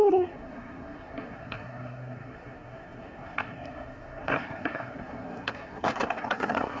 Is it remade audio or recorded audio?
remade